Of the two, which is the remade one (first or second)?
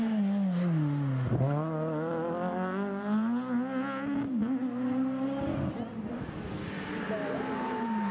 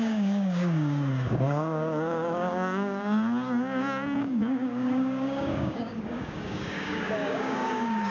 second